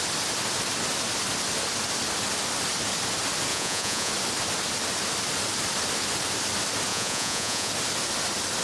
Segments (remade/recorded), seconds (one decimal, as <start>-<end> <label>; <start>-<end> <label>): 0.0-3.5 recorded; 3.5-4.1 remade; 4.1-6.9 recorded; 6.9-7.7 remade; 7.7-8.6 recorded